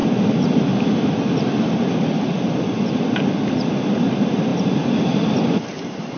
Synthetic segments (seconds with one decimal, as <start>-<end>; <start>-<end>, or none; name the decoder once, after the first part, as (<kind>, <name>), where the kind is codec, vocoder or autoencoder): none